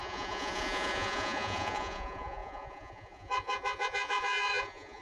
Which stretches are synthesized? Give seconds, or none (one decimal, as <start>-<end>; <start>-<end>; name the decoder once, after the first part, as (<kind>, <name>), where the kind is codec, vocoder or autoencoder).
0.0-5.0 (vocoder, Vocos)